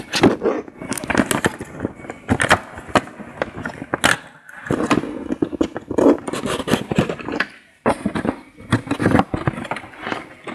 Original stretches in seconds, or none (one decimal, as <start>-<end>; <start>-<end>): 0.0-10.5